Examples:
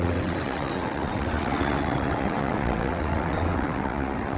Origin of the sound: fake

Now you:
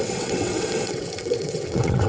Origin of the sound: fake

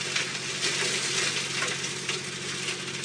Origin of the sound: real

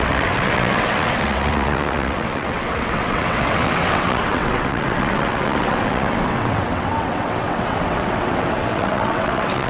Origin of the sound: fake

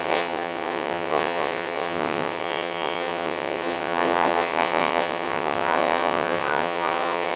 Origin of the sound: fake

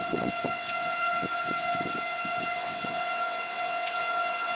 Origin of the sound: fake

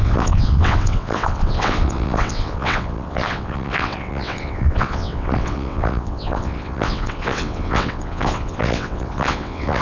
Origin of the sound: fake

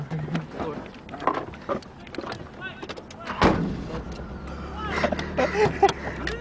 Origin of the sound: real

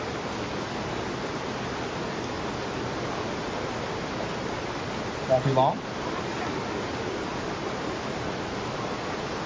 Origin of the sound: real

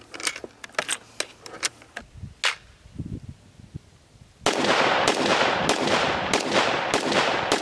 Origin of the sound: real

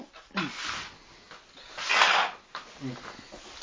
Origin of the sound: real